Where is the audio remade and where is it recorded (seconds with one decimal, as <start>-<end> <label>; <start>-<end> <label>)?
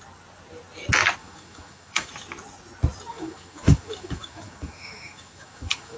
0.0-1.2 recorded; 1.2-2.1 remade; 2.1-3.1 recorded; 3.1-6.0 remade